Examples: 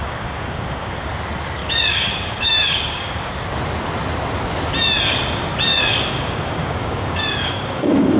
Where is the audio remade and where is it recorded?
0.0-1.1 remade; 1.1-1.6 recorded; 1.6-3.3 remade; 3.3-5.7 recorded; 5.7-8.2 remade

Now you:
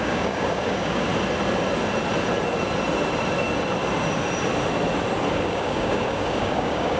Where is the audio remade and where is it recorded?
0.0-1.1 remade; 1.1-5.3 recorded; 5.3-7.0 remade

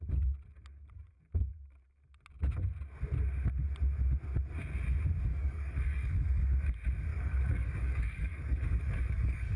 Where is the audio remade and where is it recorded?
0.0-5.3 recorded; 5.3-6.5 remade; 6.5-7.1 recorded; 7.1-9.6 remade